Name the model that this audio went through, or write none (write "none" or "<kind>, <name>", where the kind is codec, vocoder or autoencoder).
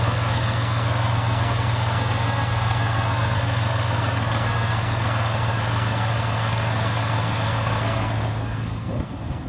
codec, SNAC